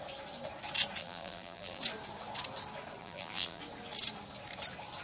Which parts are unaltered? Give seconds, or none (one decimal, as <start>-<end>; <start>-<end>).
0.0-1.0; 1.8-3.0; 3.6-5.0